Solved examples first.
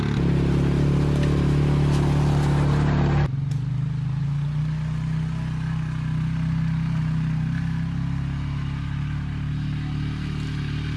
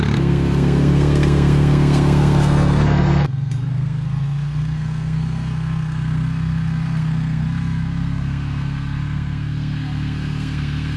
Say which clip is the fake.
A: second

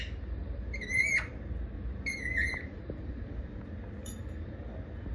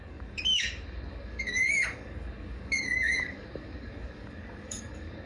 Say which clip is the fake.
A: second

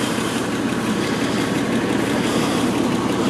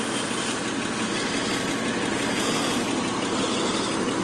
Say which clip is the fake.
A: first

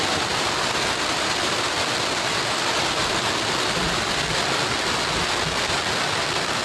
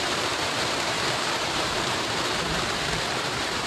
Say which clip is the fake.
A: second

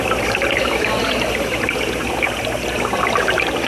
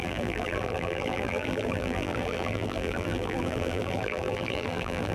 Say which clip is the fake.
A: second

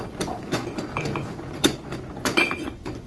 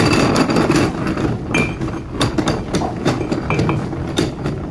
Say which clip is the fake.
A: first